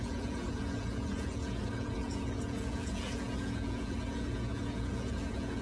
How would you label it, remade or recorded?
remade